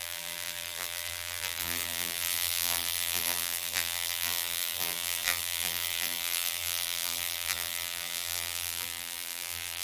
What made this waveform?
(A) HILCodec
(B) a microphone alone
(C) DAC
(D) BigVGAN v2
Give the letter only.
D